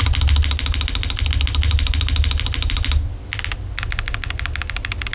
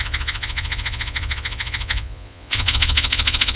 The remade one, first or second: second